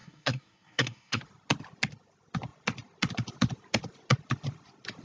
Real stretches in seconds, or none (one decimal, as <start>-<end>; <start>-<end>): 1.2-5.0